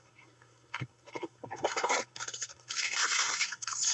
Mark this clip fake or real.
fake